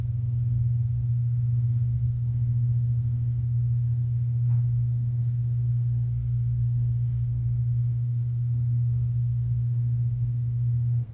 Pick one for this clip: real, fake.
fake